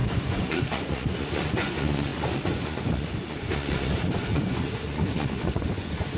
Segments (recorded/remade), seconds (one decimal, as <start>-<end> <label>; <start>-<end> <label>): 0.0-6.2 remade